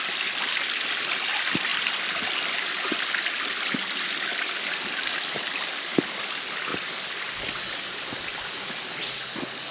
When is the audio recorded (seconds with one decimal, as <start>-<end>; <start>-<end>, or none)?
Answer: 0.0-9.7